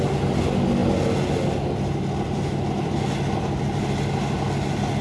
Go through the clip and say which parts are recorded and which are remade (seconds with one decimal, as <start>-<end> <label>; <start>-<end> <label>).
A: 0.0-5.0 recorded